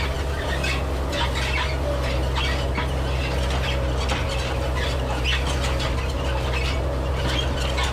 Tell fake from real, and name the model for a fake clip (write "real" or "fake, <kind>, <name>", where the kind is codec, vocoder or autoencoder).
real